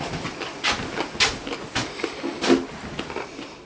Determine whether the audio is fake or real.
real